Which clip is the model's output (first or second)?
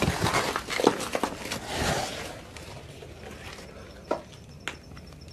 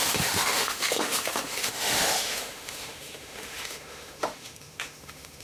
second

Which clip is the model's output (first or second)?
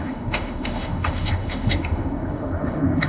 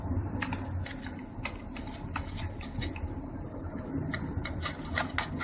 first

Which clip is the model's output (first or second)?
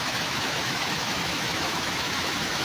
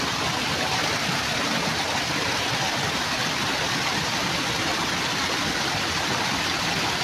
first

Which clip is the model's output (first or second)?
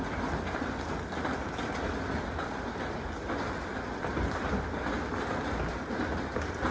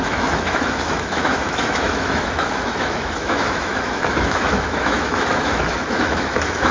second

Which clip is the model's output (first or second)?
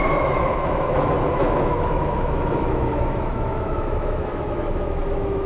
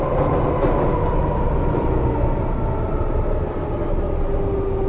first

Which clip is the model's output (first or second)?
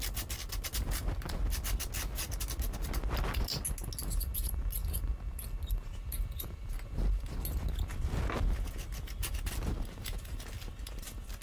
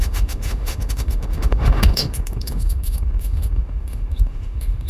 second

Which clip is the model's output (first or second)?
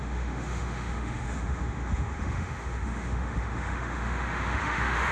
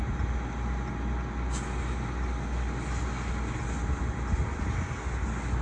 first